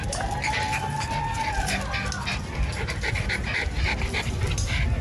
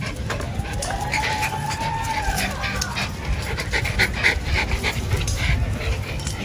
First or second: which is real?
first